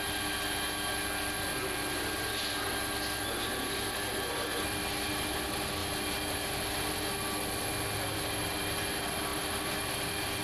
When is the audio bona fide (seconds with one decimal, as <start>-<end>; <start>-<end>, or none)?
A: 0.0-9.3